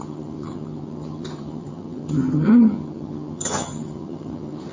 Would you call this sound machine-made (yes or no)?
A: yes